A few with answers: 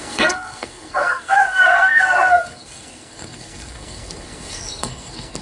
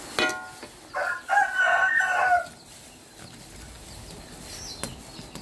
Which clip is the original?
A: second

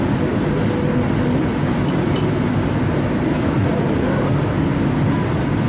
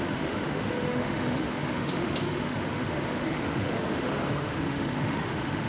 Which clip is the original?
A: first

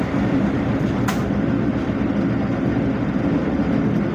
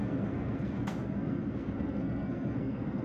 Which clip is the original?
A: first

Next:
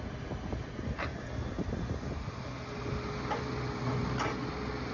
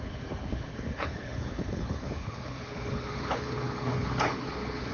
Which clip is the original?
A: first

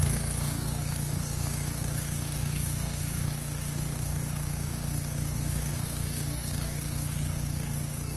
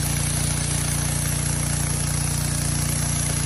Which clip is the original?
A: second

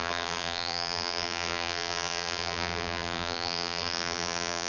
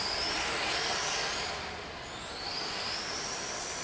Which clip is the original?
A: second